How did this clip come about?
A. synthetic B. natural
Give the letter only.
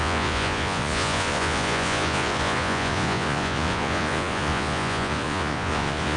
A